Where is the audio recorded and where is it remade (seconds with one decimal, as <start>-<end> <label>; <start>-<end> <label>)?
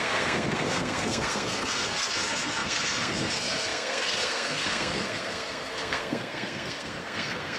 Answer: 0.0-7.6 remade